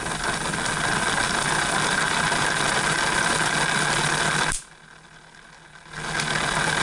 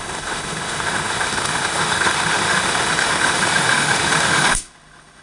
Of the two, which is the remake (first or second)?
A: second